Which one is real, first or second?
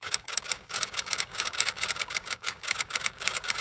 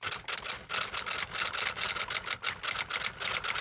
second